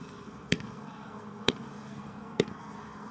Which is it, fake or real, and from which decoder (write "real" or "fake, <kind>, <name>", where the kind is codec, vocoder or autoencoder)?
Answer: fake, codec, SNAC